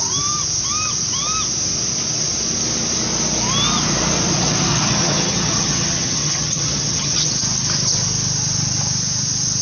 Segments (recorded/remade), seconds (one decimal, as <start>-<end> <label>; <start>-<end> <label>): 0.0-4.7 recorded; 4.7-7.3 remade; 7.3-9.6 recorded